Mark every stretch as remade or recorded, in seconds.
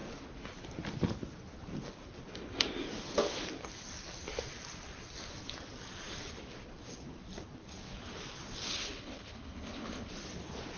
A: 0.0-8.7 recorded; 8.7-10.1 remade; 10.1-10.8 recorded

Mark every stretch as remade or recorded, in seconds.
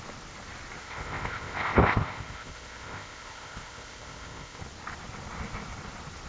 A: 0.0-0.8 recorded; 0.8-4.6 remade; 4.6-6.3 recorded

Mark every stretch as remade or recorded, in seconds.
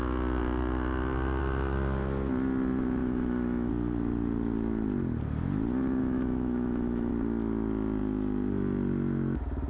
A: 0.0-3.0 recorded; 3.0-3.7 remade; 3.7-6.0 recorded; 6.0-7.1 remade; 7.1-9.7 recorded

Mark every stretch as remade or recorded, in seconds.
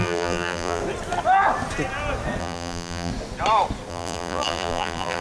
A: 0.0-0.8 remade; 0.8-2.4 recorded; 2.4-3.1 remade; 3.1-3.9 recorded; 3.9-5.2 remade